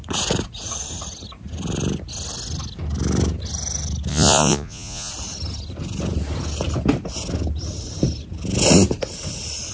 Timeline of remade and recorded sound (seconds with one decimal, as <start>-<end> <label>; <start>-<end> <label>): 0.0-4.1 recorded; 4.1-5.1 remade; 5.1-9.7 recorded